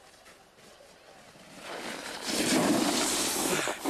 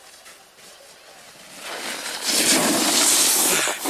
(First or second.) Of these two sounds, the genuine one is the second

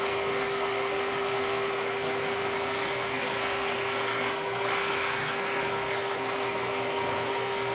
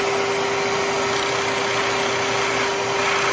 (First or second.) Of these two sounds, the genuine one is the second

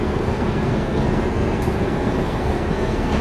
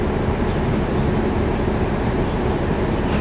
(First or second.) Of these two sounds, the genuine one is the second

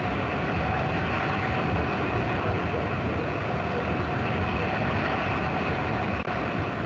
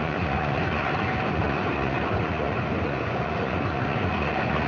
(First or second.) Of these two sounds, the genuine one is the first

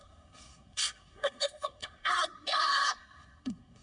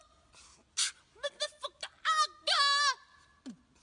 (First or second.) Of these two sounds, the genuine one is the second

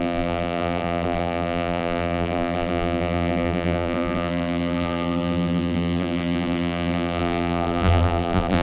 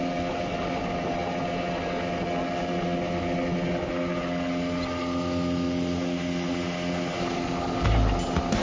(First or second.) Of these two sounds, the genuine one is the second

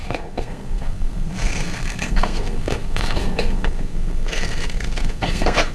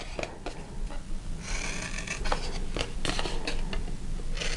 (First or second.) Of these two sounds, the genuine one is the second